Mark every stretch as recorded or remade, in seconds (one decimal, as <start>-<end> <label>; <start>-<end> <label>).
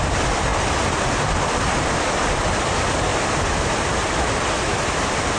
0.0-5.4 recorded